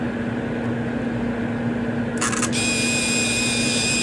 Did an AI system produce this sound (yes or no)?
no